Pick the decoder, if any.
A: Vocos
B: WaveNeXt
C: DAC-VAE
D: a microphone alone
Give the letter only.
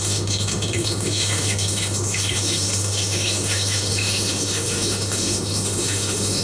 C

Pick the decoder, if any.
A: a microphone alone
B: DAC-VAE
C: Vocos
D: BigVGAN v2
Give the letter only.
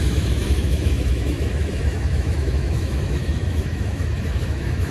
B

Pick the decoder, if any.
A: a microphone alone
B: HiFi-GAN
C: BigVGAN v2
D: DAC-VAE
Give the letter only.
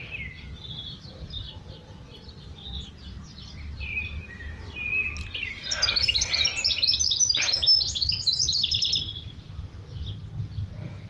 A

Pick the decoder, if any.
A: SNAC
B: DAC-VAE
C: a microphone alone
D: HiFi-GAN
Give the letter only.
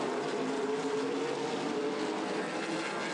C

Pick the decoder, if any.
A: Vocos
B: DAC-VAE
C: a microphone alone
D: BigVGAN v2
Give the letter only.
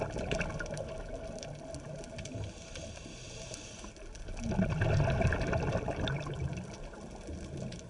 C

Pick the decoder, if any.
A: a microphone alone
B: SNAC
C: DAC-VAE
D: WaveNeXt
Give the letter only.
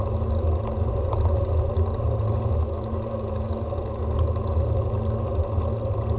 A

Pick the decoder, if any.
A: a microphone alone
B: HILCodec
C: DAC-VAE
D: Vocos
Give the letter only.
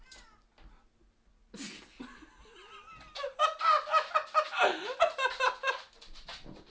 A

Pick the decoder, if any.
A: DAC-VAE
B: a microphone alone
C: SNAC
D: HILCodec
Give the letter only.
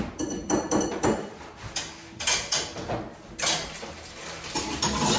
B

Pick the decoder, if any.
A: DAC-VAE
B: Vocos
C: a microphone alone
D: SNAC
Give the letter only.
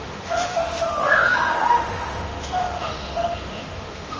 A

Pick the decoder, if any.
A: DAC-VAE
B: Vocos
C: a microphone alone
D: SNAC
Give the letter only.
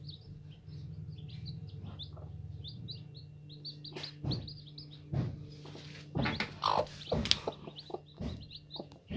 C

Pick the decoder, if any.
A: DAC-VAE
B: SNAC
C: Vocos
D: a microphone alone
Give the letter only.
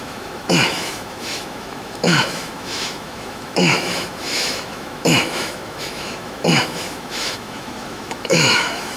A